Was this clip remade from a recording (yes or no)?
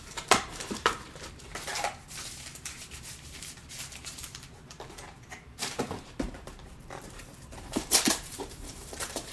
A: yes